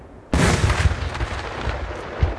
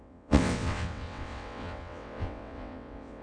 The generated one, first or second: second